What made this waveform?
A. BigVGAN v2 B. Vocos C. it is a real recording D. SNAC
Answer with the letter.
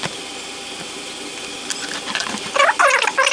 C